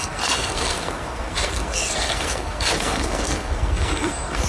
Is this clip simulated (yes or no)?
yes